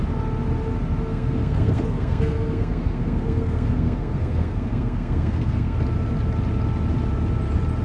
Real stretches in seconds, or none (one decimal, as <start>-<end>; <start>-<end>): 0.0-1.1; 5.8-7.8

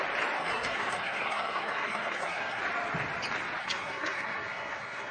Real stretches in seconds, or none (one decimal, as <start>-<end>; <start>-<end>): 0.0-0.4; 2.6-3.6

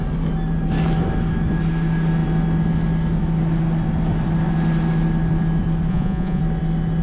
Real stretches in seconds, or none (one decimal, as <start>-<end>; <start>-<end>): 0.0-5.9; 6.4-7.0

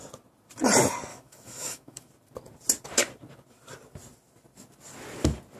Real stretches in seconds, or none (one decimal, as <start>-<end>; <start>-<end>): 0.0-1.1; 2.1-5.6

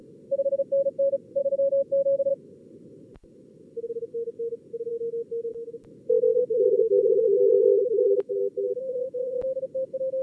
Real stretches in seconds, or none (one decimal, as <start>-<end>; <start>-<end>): 0.0-1.4; 2.3-7.7; 8.4-10.2

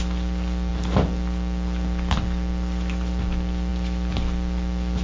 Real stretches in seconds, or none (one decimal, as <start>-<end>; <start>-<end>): 0.0-5.0